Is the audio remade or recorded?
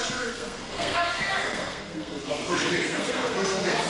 remade